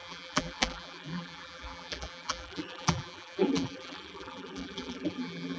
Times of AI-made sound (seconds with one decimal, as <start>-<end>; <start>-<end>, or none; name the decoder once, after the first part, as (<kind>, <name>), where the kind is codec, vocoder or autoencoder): 0.0-5.6 (vocoder, BigVGAN v2)